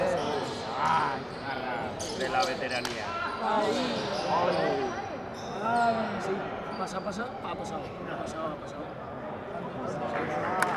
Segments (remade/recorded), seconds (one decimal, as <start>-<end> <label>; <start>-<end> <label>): 0.0-2.4 remade; 2.4-3.6 recorded; 3.6-5.3 remade; 5.3-6.8 recorded; 6.8-10.8 remade

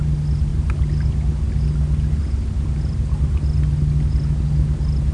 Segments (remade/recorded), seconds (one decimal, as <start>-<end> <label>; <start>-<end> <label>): 0.0-5.1 recorded

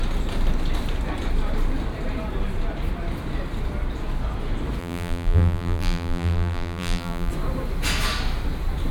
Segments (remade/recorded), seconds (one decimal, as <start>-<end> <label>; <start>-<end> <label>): 0.0-4.8 recorded; 4.8-7.3 remade; 7.3-8.9 recorded